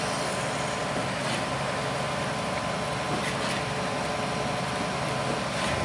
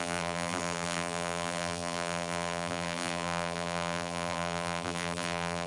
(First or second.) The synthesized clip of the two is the second